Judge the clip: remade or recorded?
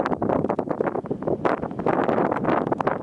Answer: recorded